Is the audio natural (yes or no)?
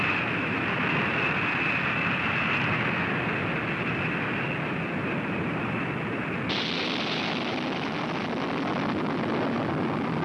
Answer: yes